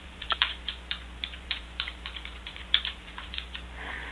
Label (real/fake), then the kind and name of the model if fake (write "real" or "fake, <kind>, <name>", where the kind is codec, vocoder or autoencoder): fake, vocoder, Vocos